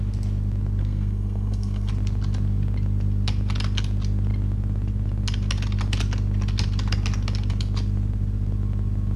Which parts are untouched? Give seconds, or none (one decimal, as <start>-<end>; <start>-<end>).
0.0-0.8; 1.9-9.2